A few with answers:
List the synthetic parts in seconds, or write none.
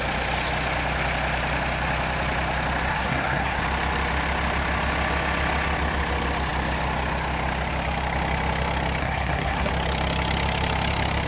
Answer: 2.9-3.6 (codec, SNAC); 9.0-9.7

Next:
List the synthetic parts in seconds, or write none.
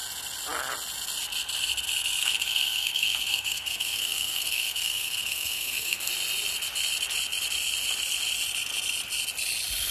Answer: 2.2-6.1 (codec, SNAC)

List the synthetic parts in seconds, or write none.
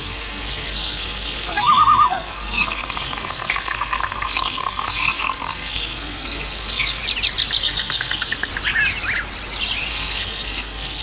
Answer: 0.0-7.0 (codec, SNAC); 7.6-8.5; 9.9-11.0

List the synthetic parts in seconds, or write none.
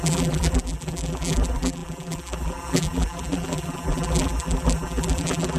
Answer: 0.0-5.6 (vocoder, BigVGAN v2)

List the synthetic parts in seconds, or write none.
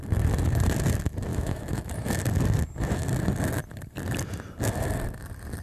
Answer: 1.3-1.9 (autoencoder, DAC-VAE)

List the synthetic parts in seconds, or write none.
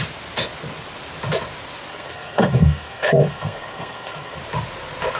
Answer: 1.9-4.4 (codec, SNAC)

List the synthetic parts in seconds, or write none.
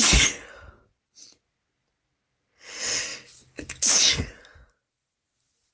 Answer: none